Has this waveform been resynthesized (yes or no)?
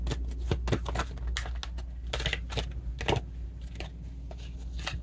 no